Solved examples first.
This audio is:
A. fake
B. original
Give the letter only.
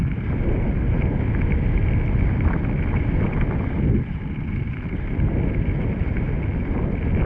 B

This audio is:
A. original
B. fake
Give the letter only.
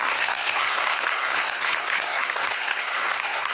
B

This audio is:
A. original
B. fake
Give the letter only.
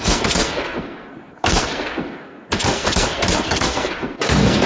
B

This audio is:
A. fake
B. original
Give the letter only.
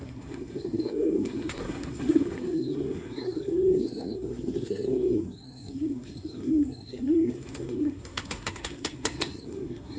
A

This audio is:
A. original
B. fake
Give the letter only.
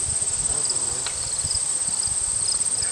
A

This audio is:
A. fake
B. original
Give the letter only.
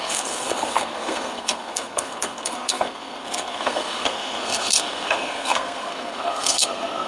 A